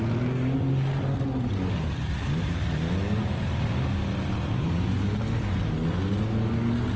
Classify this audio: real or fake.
real